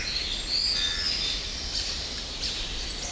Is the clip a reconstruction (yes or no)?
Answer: no